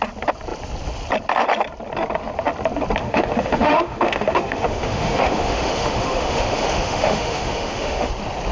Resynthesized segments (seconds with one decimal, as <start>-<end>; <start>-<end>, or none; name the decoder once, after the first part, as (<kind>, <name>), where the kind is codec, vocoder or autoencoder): 3.0-8.1 (autoencoder, DAC-VAE)